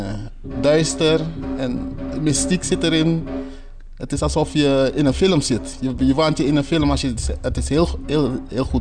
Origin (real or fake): real